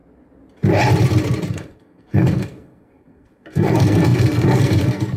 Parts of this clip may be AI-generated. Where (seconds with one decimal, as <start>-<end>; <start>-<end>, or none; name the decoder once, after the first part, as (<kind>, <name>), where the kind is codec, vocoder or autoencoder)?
1.5-5.2 (codec, SNAC)

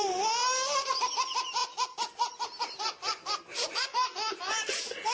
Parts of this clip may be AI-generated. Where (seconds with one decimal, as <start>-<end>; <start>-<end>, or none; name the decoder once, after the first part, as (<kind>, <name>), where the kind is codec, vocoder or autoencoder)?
1.6-4.5 (vocoder, BigVGAN v2)